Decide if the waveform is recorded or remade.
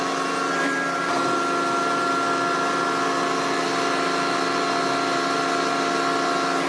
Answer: recorded